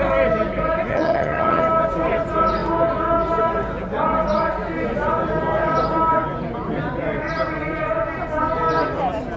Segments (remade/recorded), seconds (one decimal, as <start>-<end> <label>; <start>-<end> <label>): 0.0-0.9 recorded; 0.9-1.6 remade; 1.6-9.4 recorded

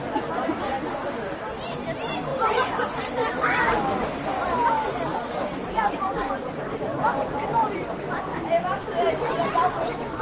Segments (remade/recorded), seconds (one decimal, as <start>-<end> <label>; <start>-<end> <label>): 0.0-3.2 remade; 3.2-5.7 recorded; 5.7-10.2 remade

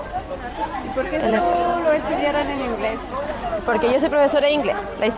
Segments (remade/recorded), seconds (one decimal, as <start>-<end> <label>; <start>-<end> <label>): 0.0-0.9 recorded; 0.9-1.4 remade; 1.4-5.2 recorded

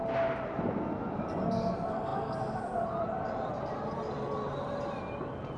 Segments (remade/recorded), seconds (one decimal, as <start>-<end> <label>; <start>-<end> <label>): 0.0-5.6 recorded